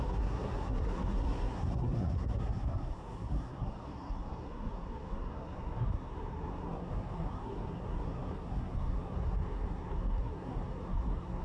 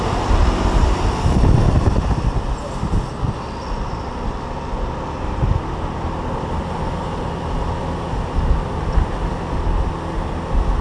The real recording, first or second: second